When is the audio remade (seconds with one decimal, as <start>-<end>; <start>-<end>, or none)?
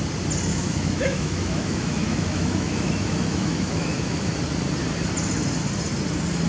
0.5-4.4